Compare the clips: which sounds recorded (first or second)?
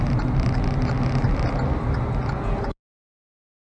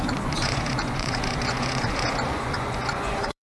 first